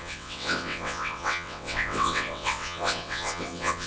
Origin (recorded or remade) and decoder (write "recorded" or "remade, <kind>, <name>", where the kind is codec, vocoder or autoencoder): remade, vocoder, WaveNeXt